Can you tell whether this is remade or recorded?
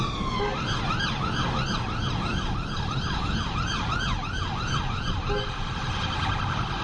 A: recorded